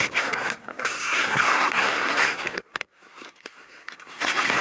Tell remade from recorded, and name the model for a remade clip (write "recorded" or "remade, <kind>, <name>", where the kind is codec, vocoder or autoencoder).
remade, codec, SNAC